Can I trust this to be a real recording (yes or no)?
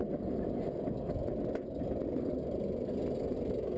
yes